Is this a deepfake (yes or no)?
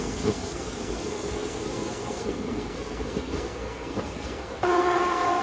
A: yes